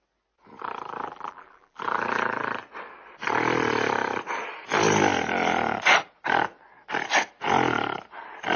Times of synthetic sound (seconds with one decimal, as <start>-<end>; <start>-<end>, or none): 1.0-1.8